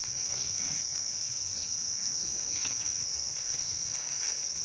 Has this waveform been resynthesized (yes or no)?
yes